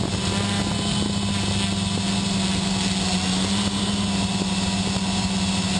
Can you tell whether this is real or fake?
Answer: real